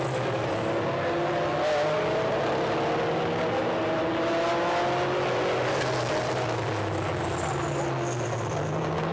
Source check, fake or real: real